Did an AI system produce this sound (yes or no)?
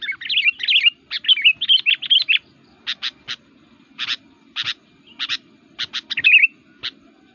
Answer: no